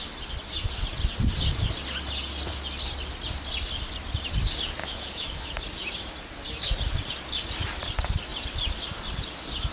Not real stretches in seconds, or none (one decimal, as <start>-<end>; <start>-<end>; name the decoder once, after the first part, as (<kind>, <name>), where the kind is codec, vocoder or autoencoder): 4.8-5.5 (autoencoder, DAC-VAE)